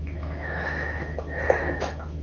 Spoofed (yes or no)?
yes